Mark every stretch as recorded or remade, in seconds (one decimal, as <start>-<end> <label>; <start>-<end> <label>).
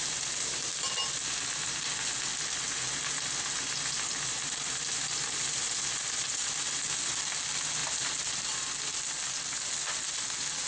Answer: 0.0-10.7 recorded